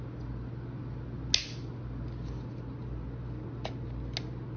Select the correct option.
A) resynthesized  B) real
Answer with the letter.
B